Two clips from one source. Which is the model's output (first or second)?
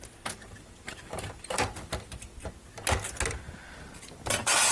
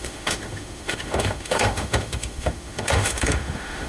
second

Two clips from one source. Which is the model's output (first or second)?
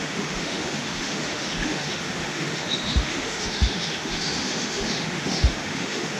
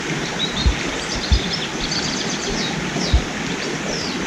first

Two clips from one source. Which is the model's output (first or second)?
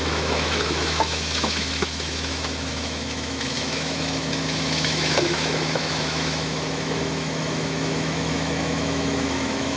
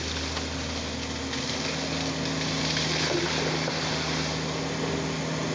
first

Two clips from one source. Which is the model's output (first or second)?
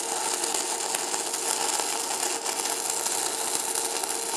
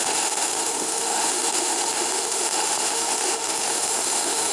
second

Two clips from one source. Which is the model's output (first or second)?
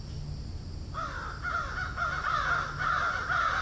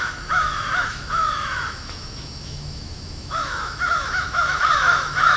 second